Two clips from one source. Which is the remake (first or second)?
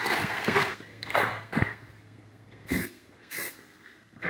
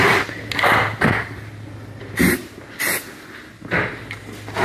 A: first